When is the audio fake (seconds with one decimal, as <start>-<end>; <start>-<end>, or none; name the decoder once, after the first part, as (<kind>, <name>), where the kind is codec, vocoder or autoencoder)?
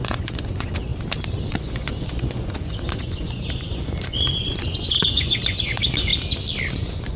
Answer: 0.0-0.9 (vocoder, Vocos); 1.5-6.1; 6.7-7.2